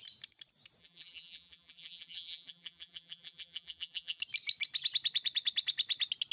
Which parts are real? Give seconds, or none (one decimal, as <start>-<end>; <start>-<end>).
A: 0.0-0.8; 4.2-6.3